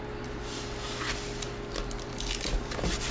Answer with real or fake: real